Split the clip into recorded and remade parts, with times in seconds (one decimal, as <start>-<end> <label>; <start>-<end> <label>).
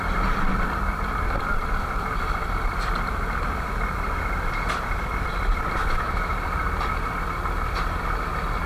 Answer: 0.0-5.8 recorded; 5.8-6.3 remade; 6.3-8.7 recorded